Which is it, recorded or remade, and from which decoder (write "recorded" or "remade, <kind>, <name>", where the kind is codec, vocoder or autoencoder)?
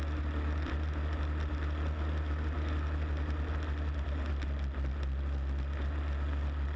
recorded